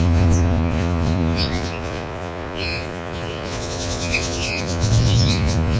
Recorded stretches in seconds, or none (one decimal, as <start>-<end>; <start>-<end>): none